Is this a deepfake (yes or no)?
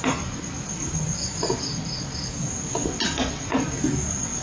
no